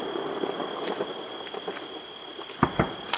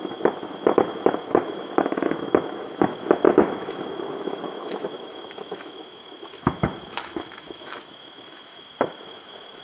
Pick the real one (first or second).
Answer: first